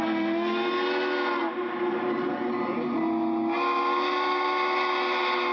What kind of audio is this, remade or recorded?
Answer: recorded